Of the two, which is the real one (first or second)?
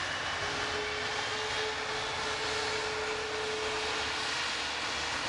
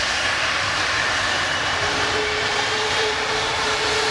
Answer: first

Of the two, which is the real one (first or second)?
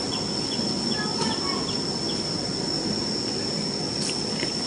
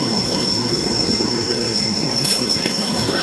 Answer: first